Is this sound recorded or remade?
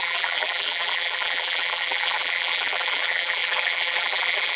remade